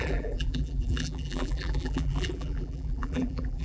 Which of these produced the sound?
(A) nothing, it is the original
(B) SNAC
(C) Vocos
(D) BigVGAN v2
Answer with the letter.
D